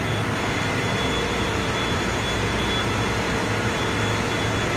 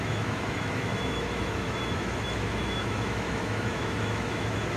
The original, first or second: first